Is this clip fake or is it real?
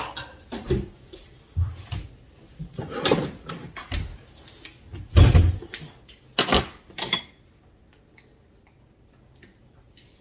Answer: real